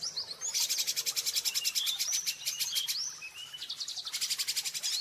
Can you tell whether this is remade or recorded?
recorded